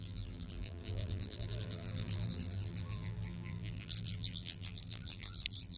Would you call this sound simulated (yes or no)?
yes